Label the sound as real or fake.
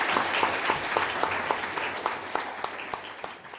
real